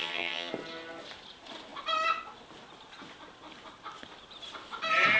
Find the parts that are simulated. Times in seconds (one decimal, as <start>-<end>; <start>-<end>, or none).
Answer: 0.0-0.5